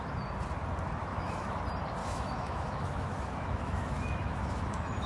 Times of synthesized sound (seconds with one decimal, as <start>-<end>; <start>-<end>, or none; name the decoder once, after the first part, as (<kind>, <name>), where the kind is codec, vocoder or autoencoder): 1.1-1.6 (autoencoder, DAC-VAE); 2.0-5.1